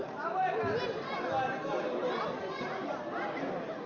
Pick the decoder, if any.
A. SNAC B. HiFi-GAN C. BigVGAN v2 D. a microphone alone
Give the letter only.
D